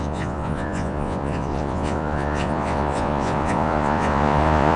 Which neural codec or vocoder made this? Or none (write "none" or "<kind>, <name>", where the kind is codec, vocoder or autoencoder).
vocoder, Vocos